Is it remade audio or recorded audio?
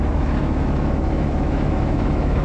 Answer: remade